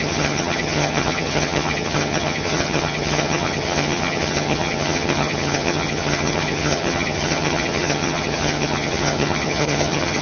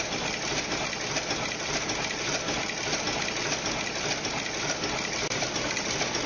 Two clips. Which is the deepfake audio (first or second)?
first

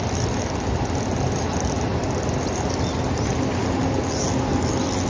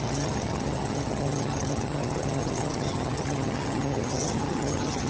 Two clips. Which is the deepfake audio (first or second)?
second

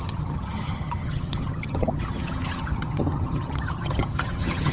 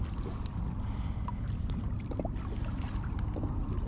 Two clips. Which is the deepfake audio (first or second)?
first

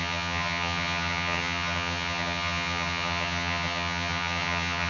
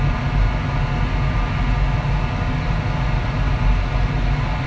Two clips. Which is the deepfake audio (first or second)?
first